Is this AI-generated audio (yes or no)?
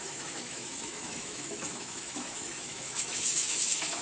yes